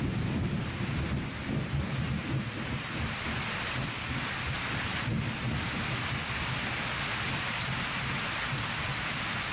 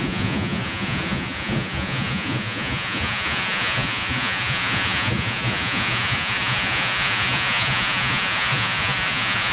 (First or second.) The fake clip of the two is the second